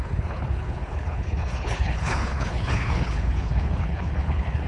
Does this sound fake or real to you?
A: fake